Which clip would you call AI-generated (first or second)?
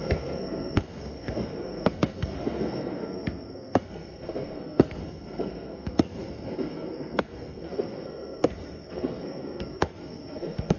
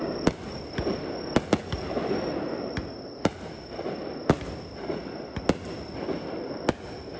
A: first